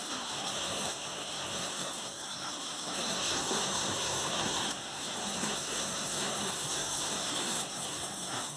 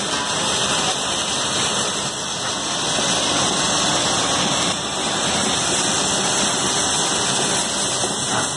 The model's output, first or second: first